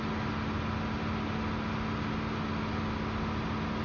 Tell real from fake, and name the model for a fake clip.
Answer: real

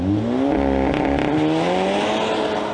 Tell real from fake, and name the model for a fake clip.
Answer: real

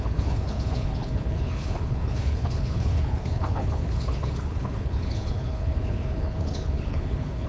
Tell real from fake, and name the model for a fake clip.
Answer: fake, codec, HILCodec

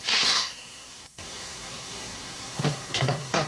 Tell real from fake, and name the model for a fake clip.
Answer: fake, codec, SNAC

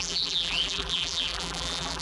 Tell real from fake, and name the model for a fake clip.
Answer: fake, vocoder, BigVGAN v2